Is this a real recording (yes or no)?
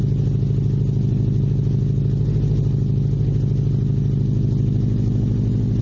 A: yes